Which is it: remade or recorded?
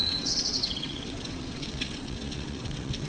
remade